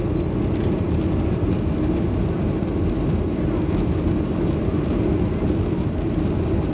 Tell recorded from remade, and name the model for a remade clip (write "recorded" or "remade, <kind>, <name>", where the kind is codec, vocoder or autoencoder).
recorded